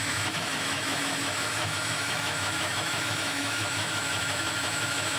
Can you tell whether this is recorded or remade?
remade